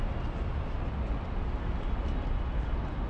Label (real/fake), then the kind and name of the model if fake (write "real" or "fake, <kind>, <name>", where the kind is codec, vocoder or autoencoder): real